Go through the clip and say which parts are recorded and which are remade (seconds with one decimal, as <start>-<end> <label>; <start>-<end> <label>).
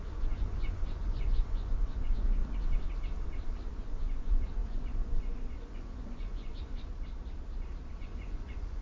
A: 0.0-2.4 remade; 2.4-3.7 recorded; 3.7-6.9 remade; 6.9-8.0 recorded; 8.0-8.8 remade